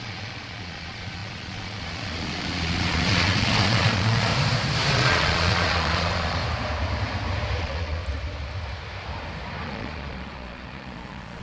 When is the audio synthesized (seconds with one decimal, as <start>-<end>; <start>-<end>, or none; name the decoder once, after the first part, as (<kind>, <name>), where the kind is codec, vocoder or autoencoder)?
0.0-4.3 (vocoder, Vocos); 4.9-6.4; 7.6-8.0; 9.6-11.4